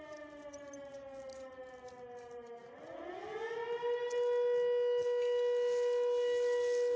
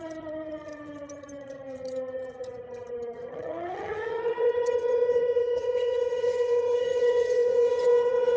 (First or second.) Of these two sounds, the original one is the first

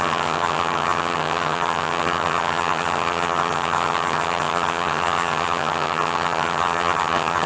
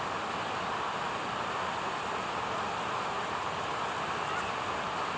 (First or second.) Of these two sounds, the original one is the second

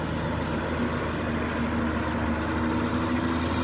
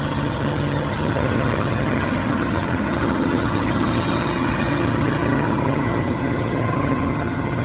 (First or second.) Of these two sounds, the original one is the first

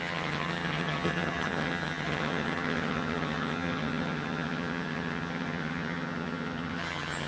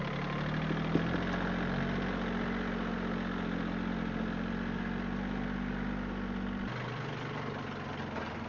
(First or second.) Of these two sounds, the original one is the second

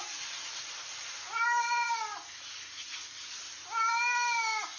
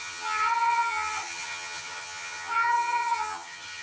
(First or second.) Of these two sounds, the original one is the first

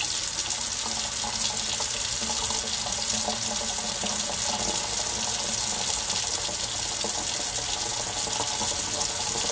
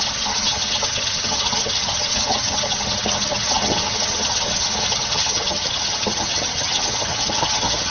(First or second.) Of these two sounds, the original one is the first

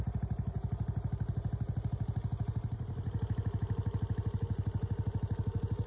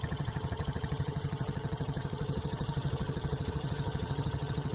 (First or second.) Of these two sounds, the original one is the first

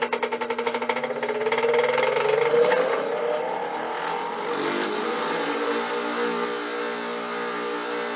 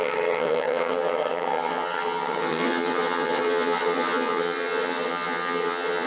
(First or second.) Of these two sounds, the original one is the first